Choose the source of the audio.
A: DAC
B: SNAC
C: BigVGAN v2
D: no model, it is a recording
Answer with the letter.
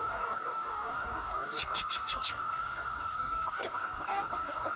A